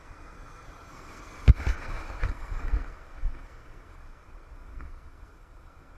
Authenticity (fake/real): fake